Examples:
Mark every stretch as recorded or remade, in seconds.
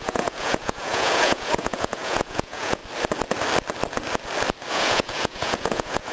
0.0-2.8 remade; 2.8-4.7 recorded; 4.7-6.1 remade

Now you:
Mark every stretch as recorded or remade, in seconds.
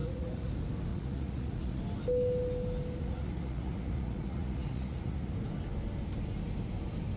0.0-0.5 remade; 0.5-0.9 recorded; 0.9-1.8 remade; 1.8-3.0 recorded; 3.0-5.3 remade; 5.3-7.2 recorded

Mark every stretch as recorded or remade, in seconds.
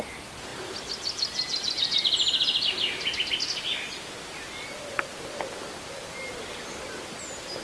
0.0-7.6 recorded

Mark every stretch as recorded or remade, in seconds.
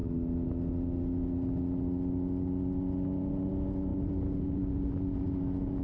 0.0-5.8 recorded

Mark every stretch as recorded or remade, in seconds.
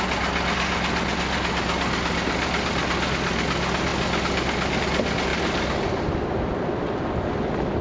0.0-7.8 recorded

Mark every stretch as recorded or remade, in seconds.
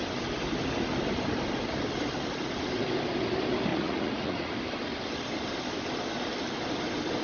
0.0-3.7 recorded; 3.7-4.5 remade; 4.5-7.2 recorded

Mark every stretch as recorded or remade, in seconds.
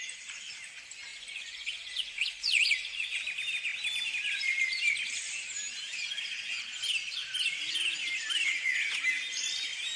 0.0-1.1 recorded; 1.1-3.2 remade; 3.2-10.0 recorded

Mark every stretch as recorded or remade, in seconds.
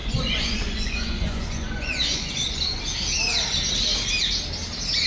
0.0-2.8 remade; 2.8-5.1 recorded